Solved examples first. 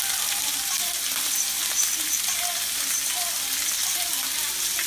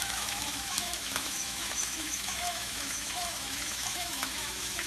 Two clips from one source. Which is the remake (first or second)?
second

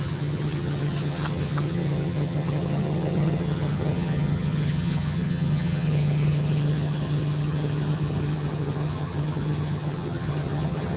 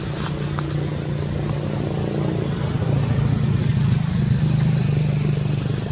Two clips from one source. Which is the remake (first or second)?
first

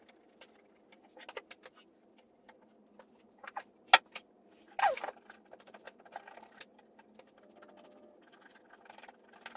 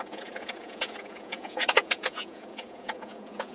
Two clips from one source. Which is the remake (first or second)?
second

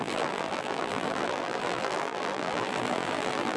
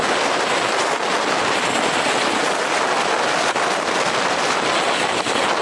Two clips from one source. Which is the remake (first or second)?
first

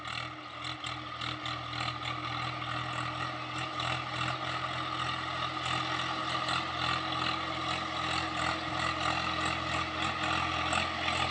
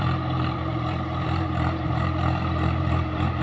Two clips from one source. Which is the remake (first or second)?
second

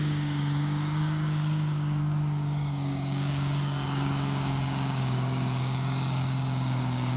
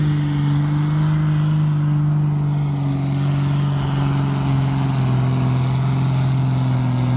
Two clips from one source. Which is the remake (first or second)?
first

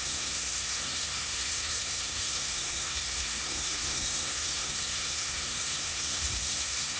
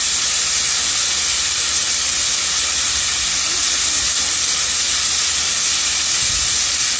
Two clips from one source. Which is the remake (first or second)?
first